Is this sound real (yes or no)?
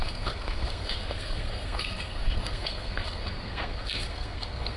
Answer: no